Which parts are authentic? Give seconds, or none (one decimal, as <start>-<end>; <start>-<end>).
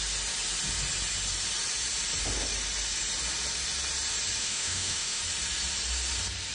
0.0-4.4; 5.2-6.5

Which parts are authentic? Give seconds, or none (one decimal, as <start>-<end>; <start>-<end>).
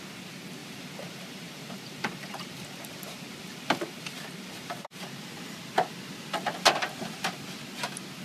0.0-0.6; 5.2-8.2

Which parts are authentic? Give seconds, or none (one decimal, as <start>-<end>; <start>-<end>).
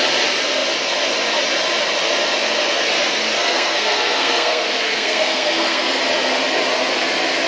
0.0-3.4; 6.0-7.5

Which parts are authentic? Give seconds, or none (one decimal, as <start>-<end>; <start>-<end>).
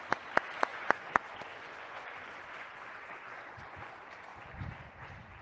0.0-0.7; 3.9-4.3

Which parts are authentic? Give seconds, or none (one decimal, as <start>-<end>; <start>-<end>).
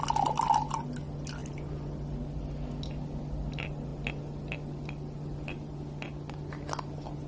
0.0-7.3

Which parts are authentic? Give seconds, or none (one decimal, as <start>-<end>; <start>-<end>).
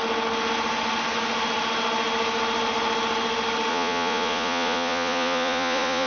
0.0-3.7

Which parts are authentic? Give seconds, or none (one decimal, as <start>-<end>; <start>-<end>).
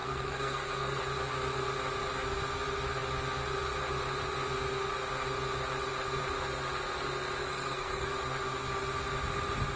1.0-7.4; 8.1-9.8